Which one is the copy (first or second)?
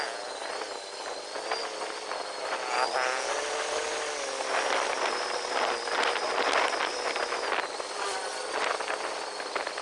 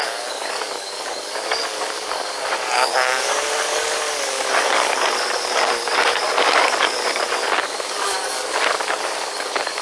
second